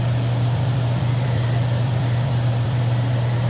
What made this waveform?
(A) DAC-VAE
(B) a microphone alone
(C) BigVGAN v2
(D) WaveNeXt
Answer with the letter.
C